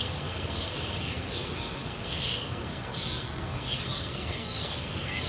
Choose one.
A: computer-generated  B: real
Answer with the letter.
A